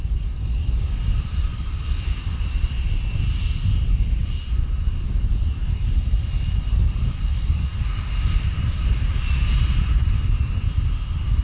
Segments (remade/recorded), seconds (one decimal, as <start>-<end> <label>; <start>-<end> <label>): 0.0-11.4 remade